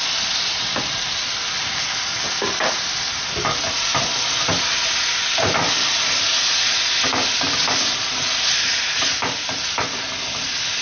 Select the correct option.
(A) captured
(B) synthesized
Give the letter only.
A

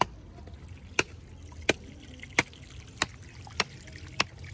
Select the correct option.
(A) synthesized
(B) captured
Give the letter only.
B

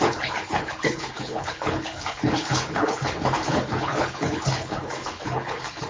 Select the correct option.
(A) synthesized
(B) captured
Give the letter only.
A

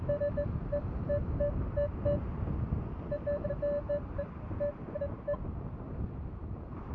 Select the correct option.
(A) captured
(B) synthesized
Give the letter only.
A